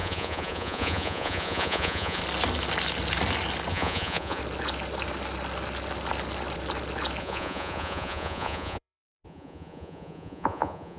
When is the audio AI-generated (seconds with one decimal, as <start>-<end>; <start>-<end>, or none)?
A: 0.0-2.2; 3.7-4.4; 7.2-11.0